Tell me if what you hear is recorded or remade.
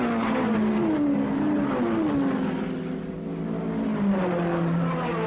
recorded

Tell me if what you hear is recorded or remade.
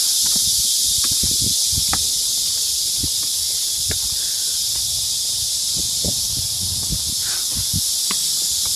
recorded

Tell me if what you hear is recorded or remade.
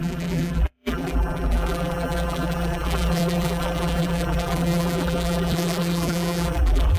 remade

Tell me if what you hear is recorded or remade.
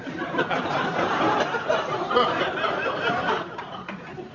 remade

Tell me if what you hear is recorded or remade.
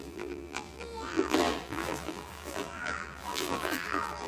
remade